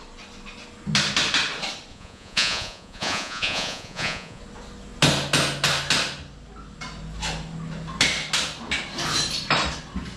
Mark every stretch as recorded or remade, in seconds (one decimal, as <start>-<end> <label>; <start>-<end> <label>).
0.0-1.9 recorded; 1.9-4.4 remade; 4.4-10.2 recorded